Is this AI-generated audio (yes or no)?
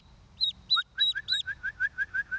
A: no